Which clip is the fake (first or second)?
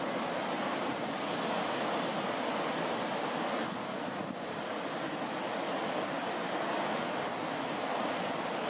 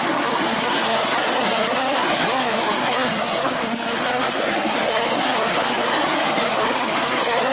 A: second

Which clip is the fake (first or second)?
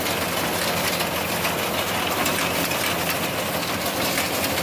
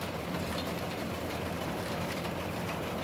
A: second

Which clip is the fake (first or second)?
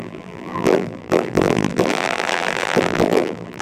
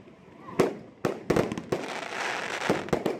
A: first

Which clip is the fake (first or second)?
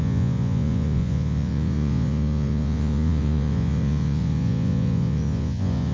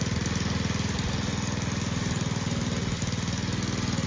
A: first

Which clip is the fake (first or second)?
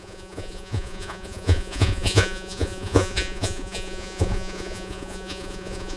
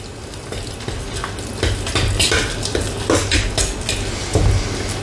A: first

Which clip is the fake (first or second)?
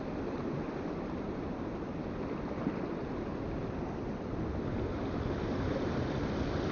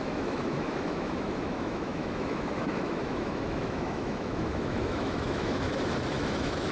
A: second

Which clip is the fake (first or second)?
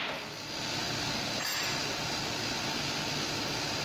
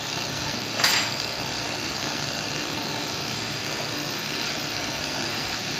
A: second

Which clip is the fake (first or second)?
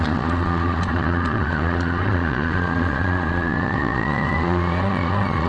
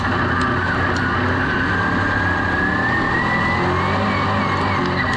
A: first